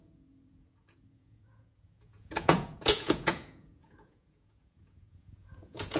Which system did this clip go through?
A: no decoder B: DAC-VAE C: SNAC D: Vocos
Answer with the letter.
D